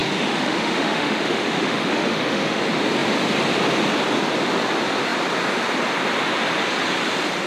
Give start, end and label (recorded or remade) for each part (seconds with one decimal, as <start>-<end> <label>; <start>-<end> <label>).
0.0-2.6 remade; 2.6-7.5 recorded